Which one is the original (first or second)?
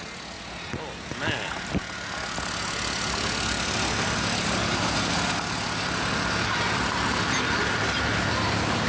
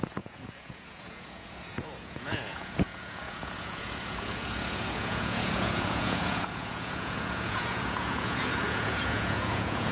first